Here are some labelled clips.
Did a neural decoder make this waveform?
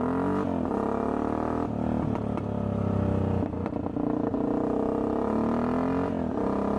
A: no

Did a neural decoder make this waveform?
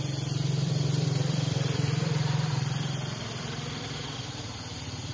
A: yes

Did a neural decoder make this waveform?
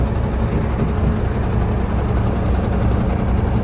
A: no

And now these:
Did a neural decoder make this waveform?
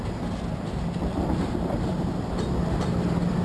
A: yes